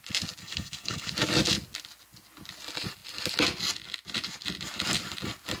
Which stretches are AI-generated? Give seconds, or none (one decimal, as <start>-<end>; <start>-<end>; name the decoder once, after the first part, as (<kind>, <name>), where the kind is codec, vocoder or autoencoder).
0.4-1.1 (codec, SNAC)